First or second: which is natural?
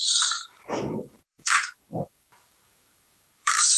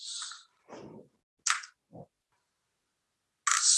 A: second